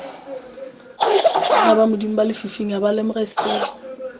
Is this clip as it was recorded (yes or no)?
yes